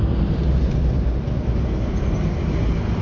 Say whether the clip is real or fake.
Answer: real